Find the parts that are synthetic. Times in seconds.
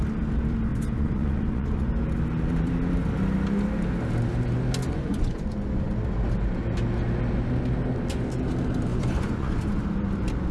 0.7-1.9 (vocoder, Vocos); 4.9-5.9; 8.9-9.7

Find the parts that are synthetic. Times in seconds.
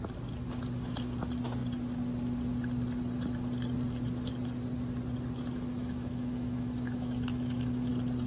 5.7-7.9 (autoencoder, DAC-VAE)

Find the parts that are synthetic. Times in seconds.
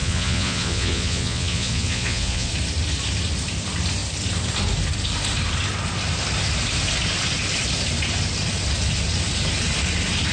0.0-2.5 (vocoder, Vocos)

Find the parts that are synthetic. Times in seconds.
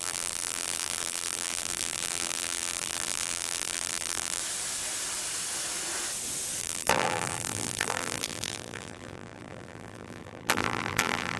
0.0-4.4 (vocoder, BigVGAN v2); 6.6-11.4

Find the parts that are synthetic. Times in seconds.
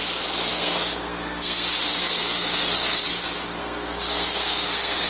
0.5-3.0 (codec, SNAC); 3.6-5.1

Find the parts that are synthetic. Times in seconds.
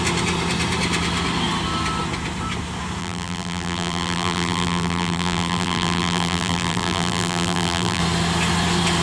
3.0-8.0 (vocoder, BigVGAN v2)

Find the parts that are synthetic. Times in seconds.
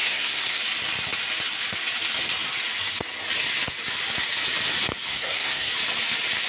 0.0-0.6 (codec, SNAC); 5.1-5.7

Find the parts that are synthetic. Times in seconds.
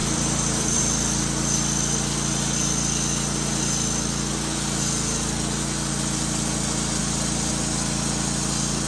0.0-0.8 (vocoder, BigVGAN v2); 7.0-7.5